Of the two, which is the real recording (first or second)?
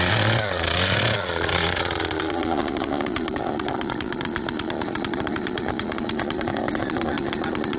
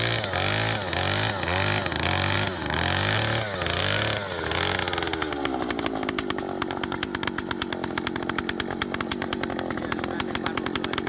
second